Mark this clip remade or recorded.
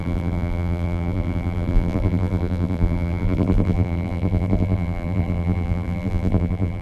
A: remade